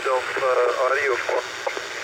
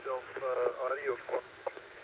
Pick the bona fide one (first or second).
first